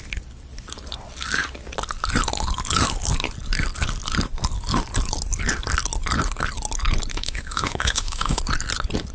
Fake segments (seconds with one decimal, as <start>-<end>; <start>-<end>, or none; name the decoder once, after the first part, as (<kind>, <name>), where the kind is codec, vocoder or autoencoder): 7.1-8.4 (autoencoder, DAC-VAE)